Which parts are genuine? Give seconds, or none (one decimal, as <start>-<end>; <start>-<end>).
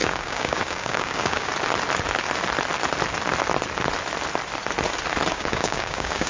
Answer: 1.5-5.3